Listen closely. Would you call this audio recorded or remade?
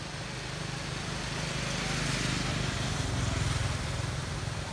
recorded